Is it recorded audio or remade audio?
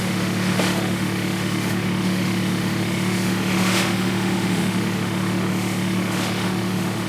remade